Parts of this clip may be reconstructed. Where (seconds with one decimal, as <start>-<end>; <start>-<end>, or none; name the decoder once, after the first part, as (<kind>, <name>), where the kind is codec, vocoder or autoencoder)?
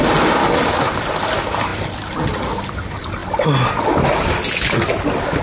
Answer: 0.4-1.0 (codec, DAC)